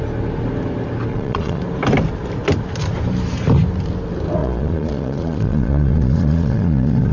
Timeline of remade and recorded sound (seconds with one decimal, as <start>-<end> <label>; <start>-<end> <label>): 0.0-1.1 recorded; 1.1-1.6 remade; 1.6-4.4 recorded; 4.4-7.1 remade